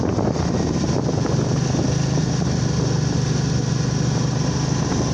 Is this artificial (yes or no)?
no